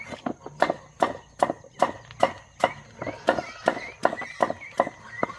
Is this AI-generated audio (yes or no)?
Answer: no